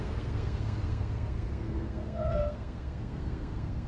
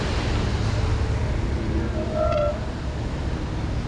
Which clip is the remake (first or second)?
first